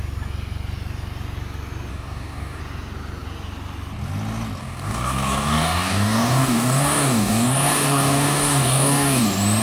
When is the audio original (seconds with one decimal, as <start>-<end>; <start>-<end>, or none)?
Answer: 0.0-1.9; 2.6-4.6; 9.2-9.6